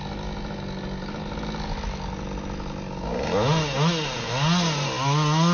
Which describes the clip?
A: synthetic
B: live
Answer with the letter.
B